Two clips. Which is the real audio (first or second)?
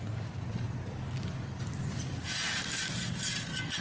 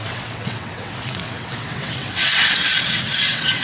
first